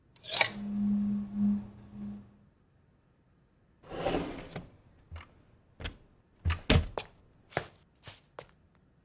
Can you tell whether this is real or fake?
real